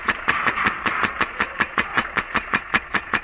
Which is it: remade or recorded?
remade